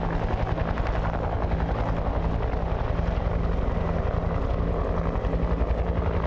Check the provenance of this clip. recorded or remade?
recorded